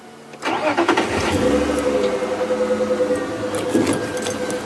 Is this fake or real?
real